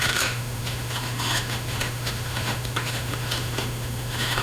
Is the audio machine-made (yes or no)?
yes